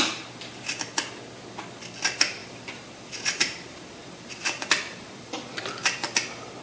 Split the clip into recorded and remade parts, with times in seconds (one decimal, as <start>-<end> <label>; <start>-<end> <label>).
0.0-2.4 recorded; 2.4-6.6 remade